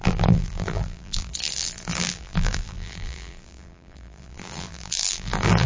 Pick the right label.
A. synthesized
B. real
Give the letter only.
A